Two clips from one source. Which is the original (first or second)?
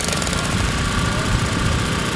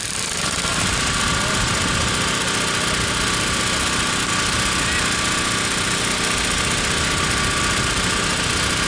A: second